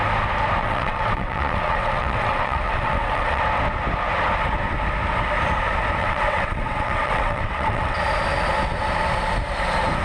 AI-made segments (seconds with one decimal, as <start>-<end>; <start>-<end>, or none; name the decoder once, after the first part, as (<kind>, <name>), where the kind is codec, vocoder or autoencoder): 0.6-3.4 (vocoder, WaveNeXt); 6.0-8.0